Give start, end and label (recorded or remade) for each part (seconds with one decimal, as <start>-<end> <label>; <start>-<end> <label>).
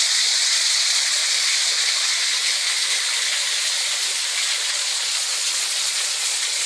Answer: 0.0-1.2 remade; 1.2-4.7 recorded; 4.7-6.7 remade